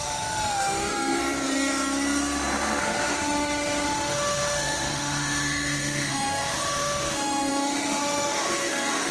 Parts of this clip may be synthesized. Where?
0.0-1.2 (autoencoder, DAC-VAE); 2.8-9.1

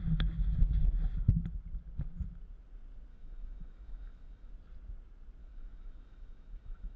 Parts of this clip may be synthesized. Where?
3.1-4.5 (autoencoder, DAC-VAE); 5.4-7.0

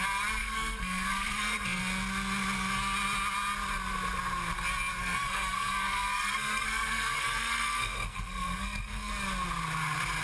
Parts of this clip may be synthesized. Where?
0.4-1.8 (codec, SNAC); 5.0-9.1

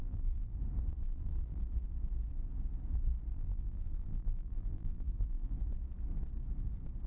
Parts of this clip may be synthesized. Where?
0.0-0.6 (vocoder, BigVGAN v2); 1.1-1.6; 3.3-5.5